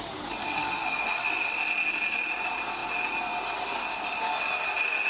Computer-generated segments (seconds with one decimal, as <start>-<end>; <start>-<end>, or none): 0.4-1.5